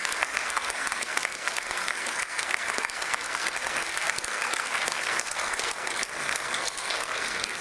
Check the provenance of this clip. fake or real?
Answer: fake